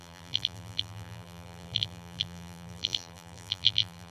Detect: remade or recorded remade